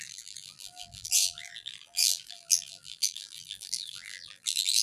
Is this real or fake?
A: fake